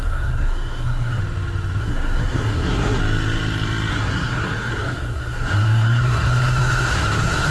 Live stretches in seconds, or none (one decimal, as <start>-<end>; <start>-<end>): 1.2-1.8; 3.0-3.9